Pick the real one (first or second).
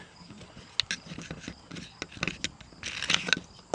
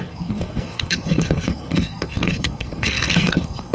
first